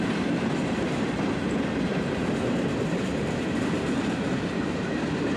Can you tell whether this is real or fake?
fake